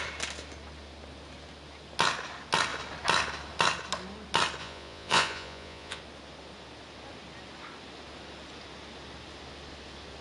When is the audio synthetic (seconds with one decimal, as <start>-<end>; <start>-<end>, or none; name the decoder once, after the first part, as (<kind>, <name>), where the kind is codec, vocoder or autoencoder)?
4.6-6.0 (vocoder, Vocos)